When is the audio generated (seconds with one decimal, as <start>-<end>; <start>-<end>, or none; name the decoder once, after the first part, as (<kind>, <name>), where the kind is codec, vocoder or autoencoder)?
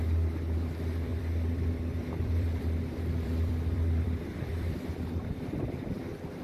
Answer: 1.1-4.9 (vocoder, BigVGAN v2)